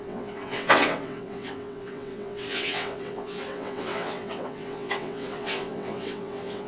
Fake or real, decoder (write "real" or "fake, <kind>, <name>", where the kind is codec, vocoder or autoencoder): fake, vocoder, WaveNeXt